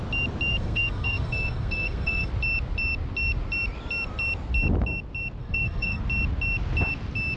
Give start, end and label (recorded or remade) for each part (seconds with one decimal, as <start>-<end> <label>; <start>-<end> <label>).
0.0-0.5 recorded; 0.5-2.3 remade; 2.3-5.4 recorded; 5.4-6.0 remade; 6.0-7.4 recorded